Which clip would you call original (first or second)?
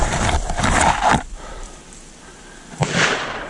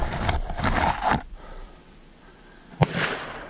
second